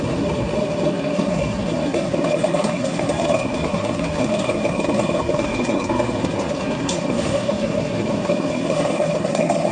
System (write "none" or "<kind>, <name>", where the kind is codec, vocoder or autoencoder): codec, SNAC